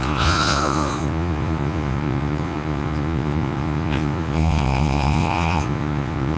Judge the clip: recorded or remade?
remade